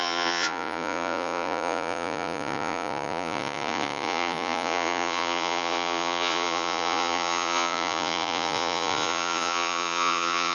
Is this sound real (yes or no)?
no